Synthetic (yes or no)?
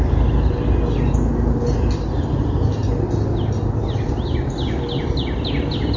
no